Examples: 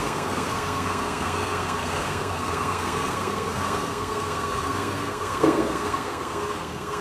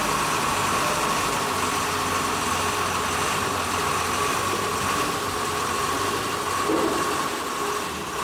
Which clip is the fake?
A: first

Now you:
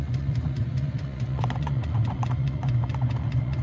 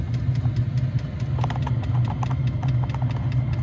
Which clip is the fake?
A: first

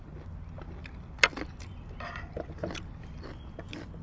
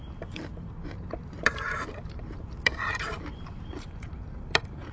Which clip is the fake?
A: second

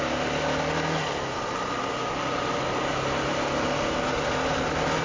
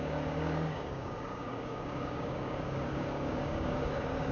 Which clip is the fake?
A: second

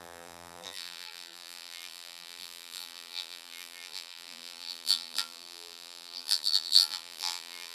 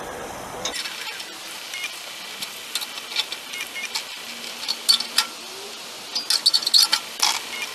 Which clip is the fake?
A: first